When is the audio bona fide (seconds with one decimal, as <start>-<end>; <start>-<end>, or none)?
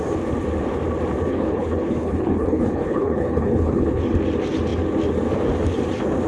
0.0-1.3; 4.0-6.3